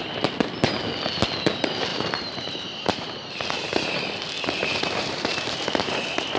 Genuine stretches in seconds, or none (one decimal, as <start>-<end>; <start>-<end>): 0.0-1.9; 3.3-4.6